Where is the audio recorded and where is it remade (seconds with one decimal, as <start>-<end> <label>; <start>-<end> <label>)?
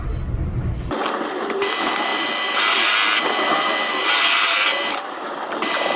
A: 0.0-2.1 recorded; 2.1-6.0 remade